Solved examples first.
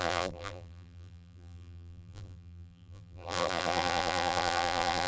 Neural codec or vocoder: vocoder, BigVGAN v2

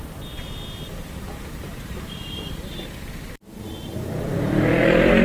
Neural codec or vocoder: vocoder, BigVGAN v2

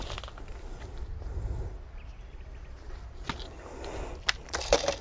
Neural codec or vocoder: none